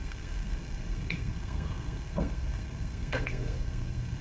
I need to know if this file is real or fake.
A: fake